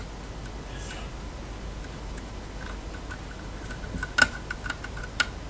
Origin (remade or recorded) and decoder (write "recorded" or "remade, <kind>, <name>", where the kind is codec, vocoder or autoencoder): recorded